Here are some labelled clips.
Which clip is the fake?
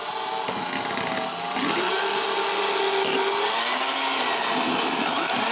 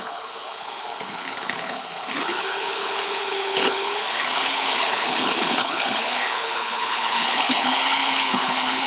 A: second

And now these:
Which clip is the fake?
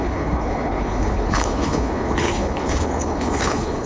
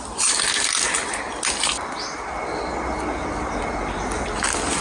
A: first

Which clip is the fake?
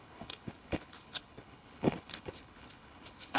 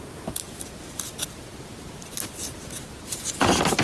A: first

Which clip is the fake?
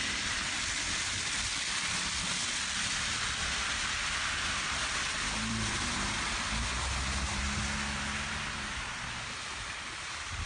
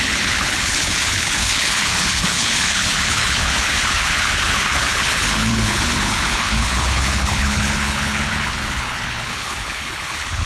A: second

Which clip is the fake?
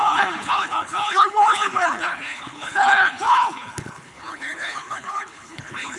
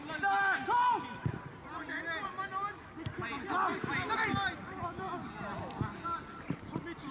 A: first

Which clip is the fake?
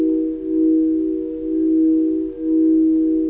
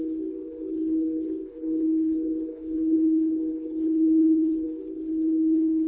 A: second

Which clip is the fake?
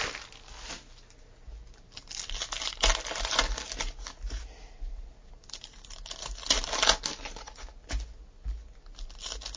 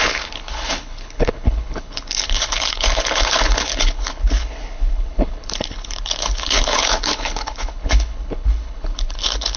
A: second